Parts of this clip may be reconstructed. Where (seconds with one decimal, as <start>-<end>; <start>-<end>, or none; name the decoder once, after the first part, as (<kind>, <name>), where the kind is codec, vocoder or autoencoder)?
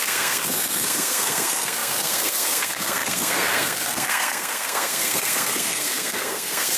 0.0-6.8 (codec, SNAC)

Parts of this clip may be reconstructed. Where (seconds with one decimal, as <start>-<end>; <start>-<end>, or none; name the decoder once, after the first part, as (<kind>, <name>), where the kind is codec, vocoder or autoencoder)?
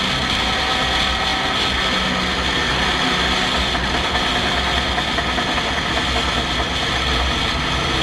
none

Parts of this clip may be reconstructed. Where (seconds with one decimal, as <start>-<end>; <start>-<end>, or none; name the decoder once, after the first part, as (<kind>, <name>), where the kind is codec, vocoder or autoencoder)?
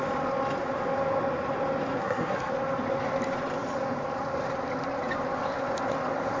2.0-2.5 (codec, SNAC)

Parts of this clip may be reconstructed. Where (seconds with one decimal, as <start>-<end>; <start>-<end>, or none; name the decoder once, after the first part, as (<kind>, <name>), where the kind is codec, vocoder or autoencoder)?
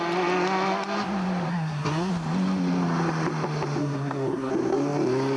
1.5-2.1 (codec, SNAC); 3.8-4.5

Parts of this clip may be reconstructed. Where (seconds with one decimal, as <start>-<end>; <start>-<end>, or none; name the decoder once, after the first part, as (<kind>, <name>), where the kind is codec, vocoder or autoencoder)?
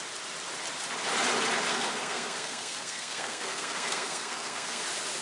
1.7-4.8 (codec, SNAC)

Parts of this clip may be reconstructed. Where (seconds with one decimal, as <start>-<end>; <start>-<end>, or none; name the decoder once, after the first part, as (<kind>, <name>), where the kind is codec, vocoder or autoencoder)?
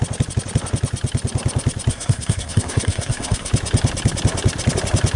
1.9-3.5 (codec, SNAC)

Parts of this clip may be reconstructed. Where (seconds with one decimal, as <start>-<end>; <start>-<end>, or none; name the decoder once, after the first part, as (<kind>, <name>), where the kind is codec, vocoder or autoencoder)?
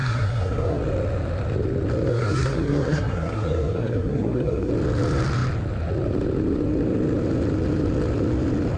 0.0-0.8 (codec, SNAC); 2.1-4.7